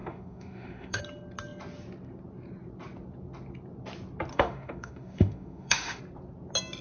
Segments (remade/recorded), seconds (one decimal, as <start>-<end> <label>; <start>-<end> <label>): 0.0-1.0 remade; 1.0-4.3 recorded; 4.3-6.0 remade; 6.0-6.8 recorded